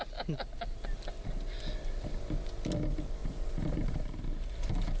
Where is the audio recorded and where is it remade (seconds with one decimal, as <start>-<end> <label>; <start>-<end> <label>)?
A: 0.0-3.2 recorded; 3.2-4.3 remade; 4.3-5.0 recorded